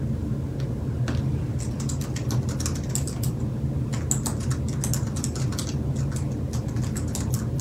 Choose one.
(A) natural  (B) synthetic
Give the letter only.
A